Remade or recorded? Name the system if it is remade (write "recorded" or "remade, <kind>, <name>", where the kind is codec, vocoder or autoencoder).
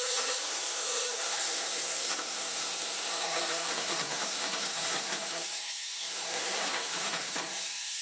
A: remade, codec, SNAC